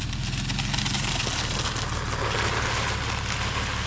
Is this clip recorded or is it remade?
recorded